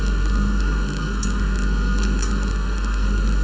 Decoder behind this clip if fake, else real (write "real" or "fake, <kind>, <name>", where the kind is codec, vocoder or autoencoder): fake, codec, SNAC